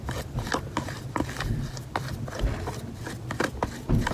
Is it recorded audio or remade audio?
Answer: recorded